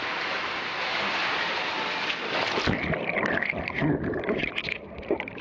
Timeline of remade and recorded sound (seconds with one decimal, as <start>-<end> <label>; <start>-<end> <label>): 0.0-5.4 recorded